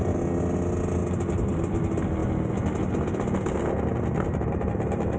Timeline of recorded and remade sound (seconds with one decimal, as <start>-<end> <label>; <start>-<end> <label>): 0.0-3.9 recorded; 3.9-5.2 remade